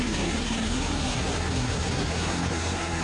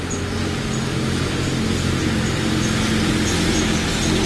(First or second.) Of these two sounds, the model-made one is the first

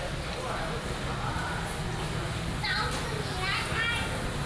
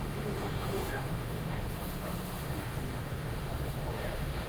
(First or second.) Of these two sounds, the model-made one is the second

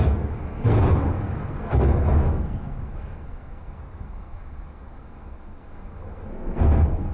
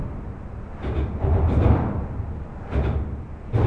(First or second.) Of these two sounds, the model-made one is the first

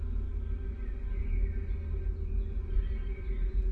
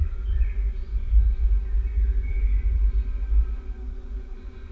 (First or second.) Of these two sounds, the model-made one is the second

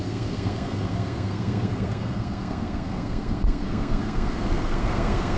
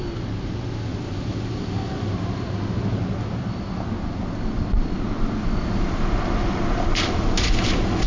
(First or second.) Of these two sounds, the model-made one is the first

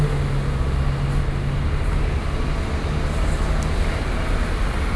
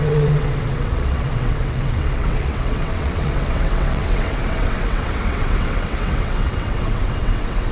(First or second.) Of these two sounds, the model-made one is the second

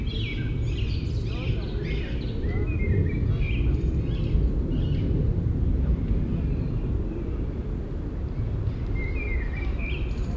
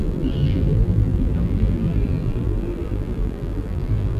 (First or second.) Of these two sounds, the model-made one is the second